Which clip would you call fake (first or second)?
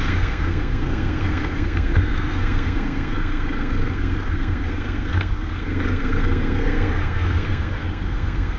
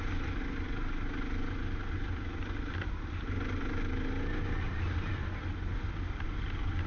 first